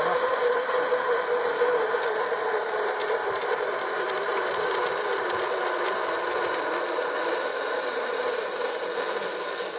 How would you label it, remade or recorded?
recorded